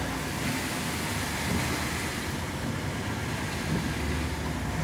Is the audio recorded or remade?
recorded